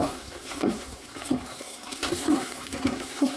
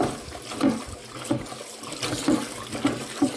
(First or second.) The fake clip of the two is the first